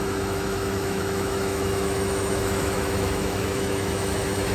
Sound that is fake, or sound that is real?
fake